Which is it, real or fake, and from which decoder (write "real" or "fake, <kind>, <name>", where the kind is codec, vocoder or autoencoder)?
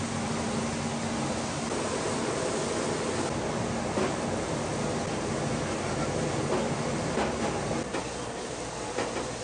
real